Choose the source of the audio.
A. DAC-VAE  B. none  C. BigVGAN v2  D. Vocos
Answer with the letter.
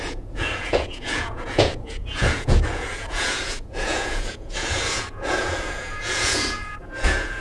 D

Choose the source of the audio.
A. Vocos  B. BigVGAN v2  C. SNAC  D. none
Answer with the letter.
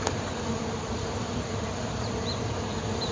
B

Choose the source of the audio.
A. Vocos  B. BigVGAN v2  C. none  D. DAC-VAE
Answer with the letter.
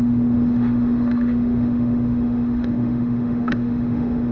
D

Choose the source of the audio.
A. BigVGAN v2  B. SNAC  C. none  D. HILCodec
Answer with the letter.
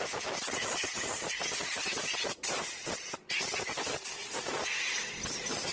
C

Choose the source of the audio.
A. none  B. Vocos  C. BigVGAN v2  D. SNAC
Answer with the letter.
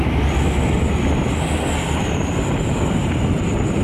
A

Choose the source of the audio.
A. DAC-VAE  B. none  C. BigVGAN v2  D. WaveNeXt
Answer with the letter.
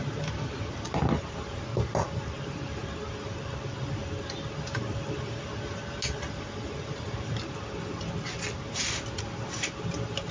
B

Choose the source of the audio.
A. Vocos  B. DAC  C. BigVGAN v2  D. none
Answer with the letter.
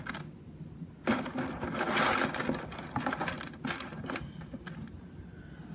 D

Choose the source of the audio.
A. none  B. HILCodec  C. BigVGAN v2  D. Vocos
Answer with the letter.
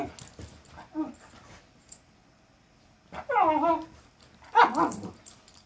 A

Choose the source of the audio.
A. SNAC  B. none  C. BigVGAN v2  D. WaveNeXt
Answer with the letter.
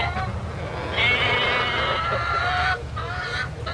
B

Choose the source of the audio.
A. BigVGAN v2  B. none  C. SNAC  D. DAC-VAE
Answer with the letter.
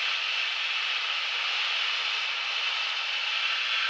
B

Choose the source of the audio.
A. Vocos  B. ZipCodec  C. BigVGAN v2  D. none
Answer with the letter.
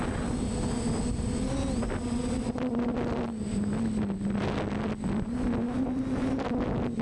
D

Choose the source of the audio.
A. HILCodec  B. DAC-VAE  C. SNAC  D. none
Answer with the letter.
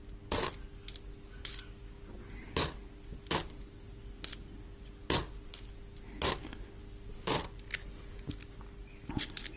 D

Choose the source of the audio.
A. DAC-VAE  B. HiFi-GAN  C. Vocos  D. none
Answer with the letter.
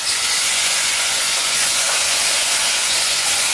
C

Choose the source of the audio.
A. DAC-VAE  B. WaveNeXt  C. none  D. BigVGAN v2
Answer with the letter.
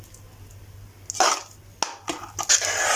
C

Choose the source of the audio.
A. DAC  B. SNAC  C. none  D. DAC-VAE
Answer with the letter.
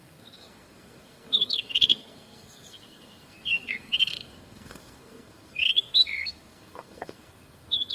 B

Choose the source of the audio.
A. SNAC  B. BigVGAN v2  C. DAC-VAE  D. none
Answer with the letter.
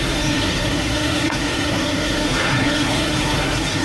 A